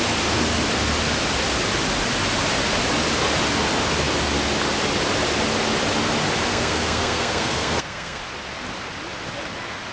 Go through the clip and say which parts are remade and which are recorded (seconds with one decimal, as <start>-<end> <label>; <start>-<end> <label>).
0.0-6.5 recorded; 6.5-8.2 remade; 8.2-9.9 recorded